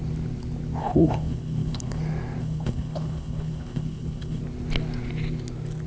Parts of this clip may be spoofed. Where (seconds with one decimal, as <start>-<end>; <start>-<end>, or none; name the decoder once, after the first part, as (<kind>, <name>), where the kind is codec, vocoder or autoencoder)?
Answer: 0.8-2.0 (codec, HILCodec); 2.4-4.4